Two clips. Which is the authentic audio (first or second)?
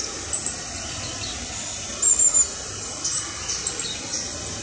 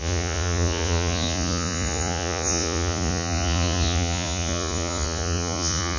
first